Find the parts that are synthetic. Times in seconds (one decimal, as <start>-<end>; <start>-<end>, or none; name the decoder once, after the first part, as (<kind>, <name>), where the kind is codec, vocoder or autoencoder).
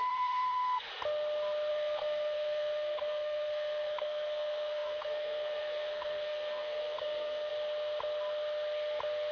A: 0.0-0.9 (codec, SNAC); 1.7-7.5